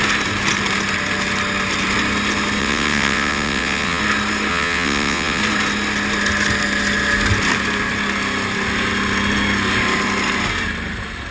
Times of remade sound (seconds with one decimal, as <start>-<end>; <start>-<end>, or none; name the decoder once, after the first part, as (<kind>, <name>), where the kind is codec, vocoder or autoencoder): 2.6-4.0 (vocoder, WaveNeXt); 4.5-5.4